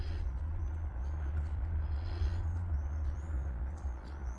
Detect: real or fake fake